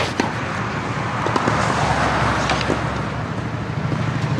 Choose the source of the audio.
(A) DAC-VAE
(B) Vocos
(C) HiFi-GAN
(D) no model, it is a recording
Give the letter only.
D